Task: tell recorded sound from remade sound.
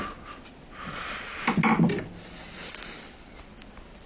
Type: recorded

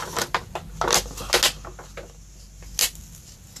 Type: recorded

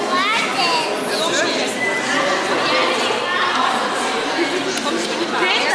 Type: recorded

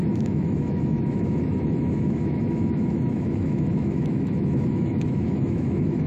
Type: remade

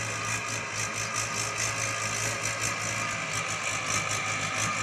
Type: recorded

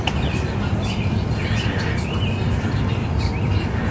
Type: recorded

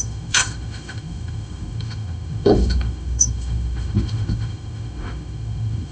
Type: remade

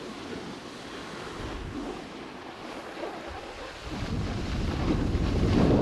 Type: recorded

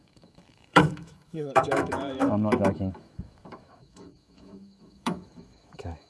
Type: remade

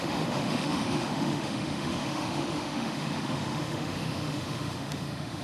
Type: remade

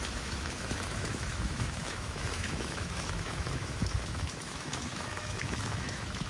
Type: remade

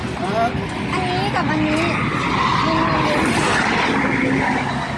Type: recorded